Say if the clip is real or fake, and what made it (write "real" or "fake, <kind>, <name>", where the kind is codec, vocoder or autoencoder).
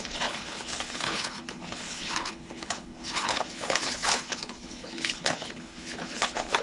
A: fake, codec, HILCodec